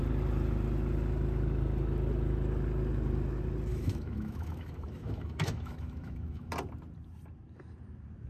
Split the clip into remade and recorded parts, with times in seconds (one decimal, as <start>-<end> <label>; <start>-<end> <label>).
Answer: 0.0-3.7 recorded; 3.7-6.5 remade; 6.5-8.3 recorded